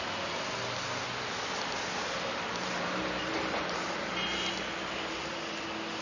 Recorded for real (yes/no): yes